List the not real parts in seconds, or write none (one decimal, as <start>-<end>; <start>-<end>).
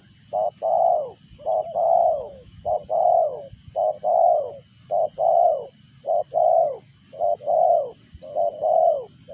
2.0-2.7